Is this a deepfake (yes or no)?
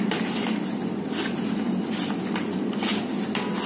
no